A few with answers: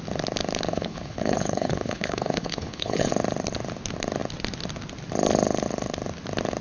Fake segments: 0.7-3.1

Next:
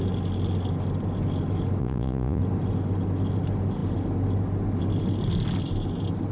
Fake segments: 1.8-2.4

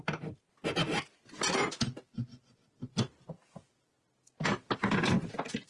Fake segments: none

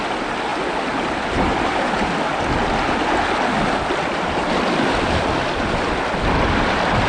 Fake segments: none

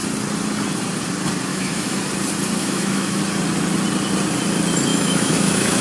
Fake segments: 1.5-2.0; 2.6-3.2; 4.9-5.8

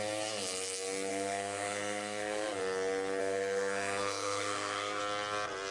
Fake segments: 1.1-2.6; 3.2-5.0

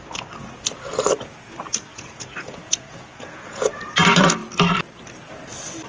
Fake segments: 1.9-3.8